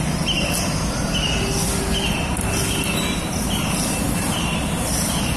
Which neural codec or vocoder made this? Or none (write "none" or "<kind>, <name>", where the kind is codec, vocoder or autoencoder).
none